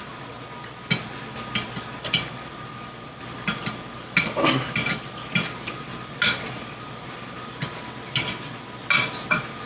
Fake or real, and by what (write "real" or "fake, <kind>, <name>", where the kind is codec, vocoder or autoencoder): real